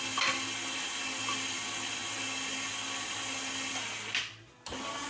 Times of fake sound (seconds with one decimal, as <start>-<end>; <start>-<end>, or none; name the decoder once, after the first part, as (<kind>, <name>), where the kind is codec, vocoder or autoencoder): none